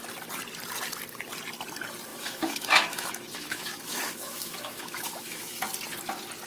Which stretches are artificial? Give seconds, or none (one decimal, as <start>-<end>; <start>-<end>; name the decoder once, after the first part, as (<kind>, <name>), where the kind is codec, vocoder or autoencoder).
2.1-5.6 (autoencoder, DAC-VAE)